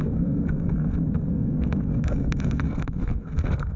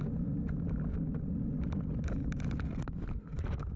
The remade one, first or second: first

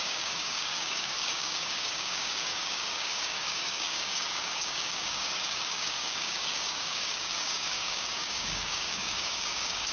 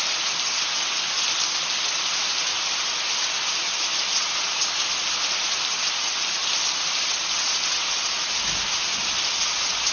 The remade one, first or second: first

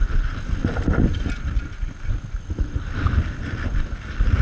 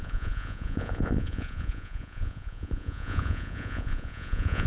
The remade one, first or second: second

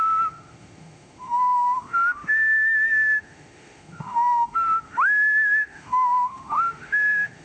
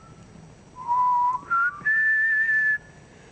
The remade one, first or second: first